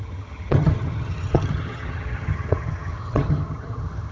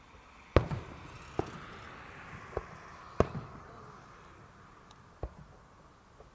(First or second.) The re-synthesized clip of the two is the first